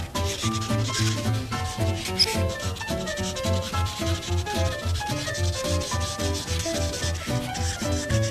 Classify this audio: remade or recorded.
recorded